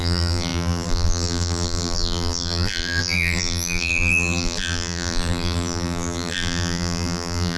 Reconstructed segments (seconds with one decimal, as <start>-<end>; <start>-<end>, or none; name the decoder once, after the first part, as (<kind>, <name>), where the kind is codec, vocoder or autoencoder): 0.0-7.6 (vocoder, BigVGAN v2)